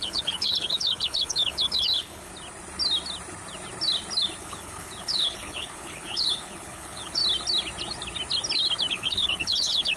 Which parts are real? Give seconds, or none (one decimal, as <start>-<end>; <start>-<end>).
2.3-4.4; 7.2-8.9